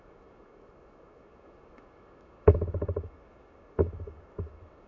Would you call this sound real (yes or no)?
no